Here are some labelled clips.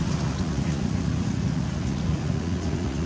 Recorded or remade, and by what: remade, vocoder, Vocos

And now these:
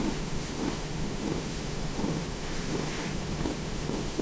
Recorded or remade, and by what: remade, autoencoder, DAC-VAE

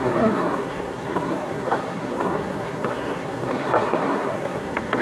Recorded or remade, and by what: remade, codec, SNAC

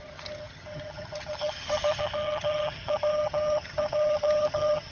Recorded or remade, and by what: remade, vocoder, HiFi-GAN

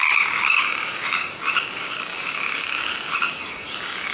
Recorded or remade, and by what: remade, codec, DAC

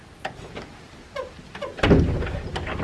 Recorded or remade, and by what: recorded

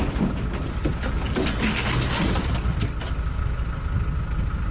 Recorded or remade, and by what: recorded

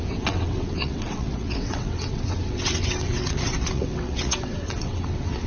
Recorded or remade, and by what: remade, vocoder, WaveNeXt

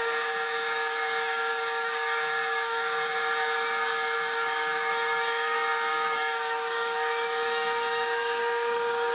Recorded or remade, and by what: remade, codec, DAC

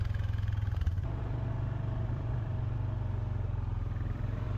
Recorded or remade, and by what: remade, vocoder, BigVGAN v2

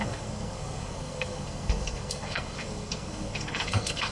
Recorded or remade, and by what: remade, codec, SNAC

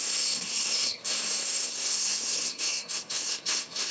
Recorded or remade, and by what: remade, codec, SNAC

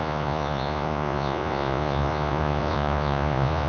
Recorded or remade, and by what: remade, vocoder, Vocos